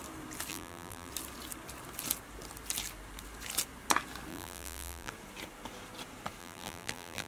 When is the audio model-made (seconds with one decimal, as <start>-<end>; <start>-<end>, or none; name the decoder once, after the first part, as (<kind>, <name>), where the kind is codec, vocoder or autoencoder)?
0.5-1.1 (vocoder, BigVGAN v2); 4.3-5.1; 6.4-7.3